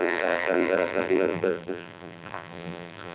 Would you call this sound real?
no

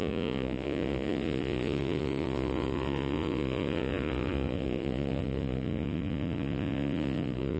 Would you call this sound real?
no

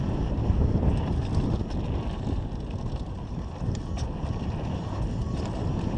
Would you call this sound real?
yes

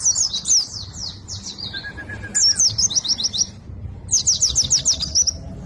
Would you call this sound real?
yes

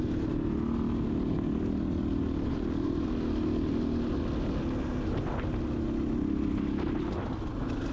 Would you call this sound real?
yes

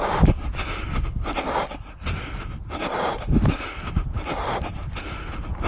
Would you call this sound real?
yes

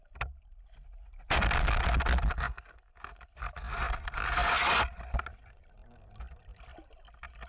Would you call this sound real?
yes